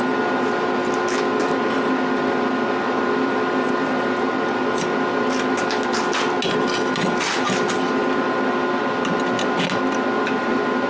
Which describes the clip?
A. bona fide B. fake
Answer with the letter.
A